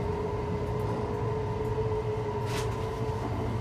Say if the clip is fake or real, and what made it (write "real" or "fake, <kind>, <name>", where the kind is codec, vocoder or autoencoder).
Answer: real